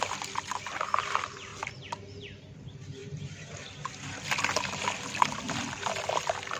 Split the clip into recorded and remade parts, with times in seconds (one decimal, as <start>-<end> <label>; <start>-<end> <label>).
0.0-6.6 recorded